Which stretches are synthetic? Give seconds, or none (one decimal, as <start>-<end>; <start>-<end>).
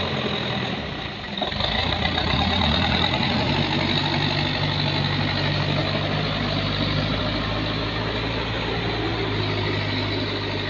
1.8-3.5